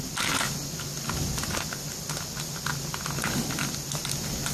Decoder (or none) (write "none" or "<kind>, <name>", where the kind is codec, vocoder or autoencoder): none